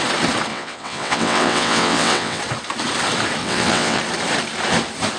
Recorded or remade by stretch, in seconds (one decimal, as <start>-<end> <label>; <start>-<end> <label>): 0.0-0.5 recorded; 0.5-2.4 remade; 2.4-3.4 recorded; 3.4-4.0 remade; 4.0-5.2 recorded